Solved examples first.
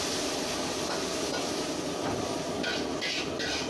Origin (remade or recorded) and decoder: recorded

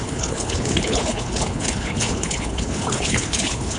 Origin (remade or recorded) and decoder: remade, codec, HILCodec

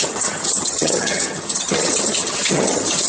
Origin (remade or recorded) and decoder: remade, vocoder, HiFi-GAN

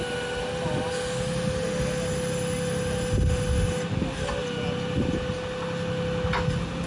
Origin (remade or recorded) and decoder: recorded